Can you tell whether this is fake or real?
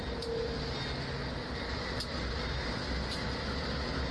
real